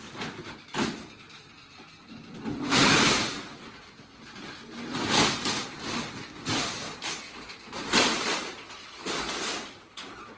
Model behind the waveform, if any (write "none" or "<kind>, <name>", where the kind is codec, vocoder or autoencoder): none